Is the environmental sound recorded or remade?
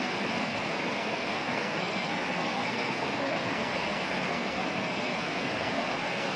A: remade